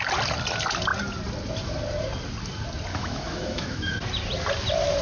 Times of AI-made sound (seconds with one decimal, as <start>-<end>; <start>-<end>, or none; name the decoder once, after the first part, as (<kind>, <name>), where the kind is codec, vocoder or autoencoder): 2.9-4.0 (autoencoder, DAC-VAE)